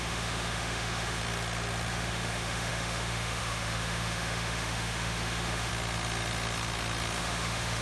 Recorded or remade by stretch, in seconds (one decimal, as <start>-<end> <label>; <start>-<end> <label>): 0.0-1.2 remade; 1.2-1.9 recorded; 1.9-5.7 remade; 5.7-7.2 recorded; 7.2-7.8 remade